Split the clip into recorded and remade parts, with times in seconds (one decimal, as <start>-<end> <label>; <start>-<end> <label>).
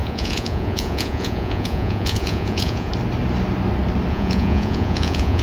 0.0-2.9 remade; 2.9-4.1 recorded; 4.1-5.4 remade